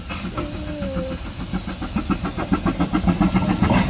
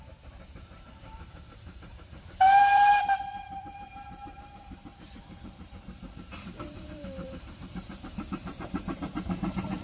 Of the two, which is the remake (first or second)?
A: second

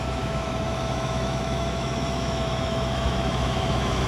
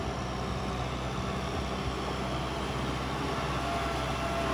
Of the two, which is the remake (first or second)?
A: first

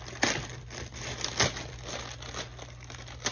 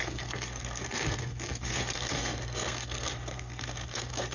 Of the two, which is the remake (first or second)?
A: second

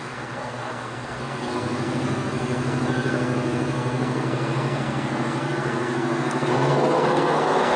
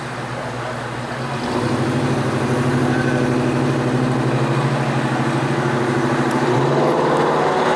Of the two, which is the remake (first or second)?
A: first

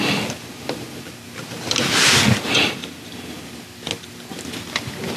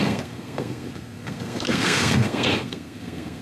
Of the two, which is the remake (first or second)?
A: second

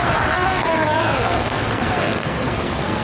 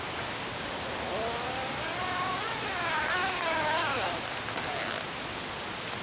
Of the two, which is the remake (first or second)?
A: first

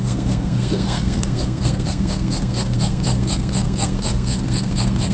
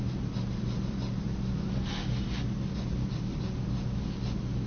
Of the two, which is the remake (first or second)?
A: first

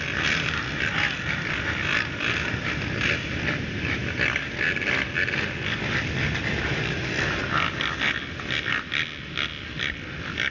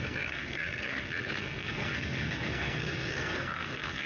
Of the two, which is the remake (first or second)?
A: second